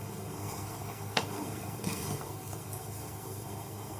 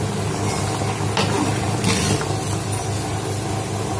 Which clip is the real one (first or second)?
second